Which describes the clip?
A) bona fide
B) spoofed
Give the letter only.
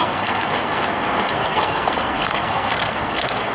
B